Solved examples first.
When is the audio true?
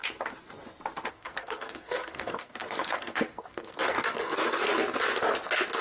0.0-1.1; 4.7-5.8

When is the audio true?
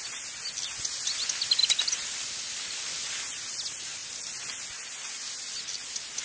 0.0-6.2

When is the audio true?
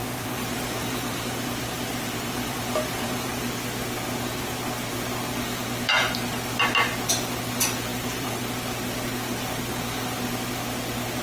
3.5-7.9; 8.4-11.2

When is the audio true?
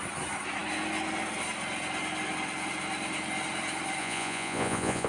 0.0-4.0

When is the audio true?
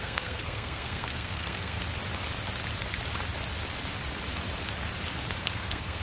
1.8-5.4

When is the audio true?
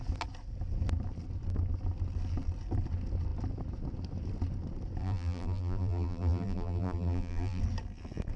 0.0-5.0; 7.6-8.4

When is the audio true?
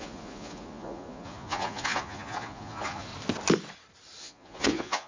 3.1-4.2